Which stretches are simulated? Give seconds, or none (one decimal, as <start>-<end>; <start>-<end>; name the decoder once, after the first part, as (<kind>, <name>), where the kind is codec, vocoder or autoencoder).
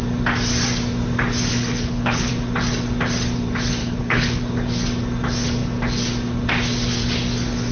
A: 1.5-2.3 (codec, HILCodec); 3.8-4.4